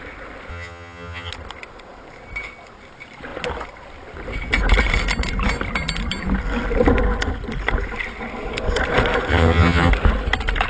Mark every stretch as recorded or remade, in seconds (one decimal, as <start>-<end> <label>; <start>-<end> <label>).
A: 0.0-0.5 recorded; 0.5-1.3 remade; 1.3-9.3 recorded; 9.3-9.9 remade; 9.9-10.7 recorded